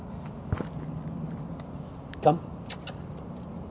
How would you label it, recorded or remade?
recorded